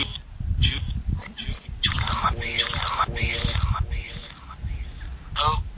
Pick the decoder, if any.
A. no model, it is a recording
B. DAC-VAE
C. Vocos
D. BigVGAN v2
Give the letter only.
A